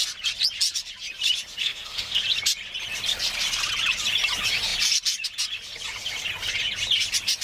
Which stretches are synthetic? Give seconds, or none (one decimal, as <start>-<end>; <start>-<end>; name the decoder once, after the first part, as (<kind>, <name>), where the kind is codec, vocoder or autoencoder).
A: 1.6-2.2 (codec, SNAC)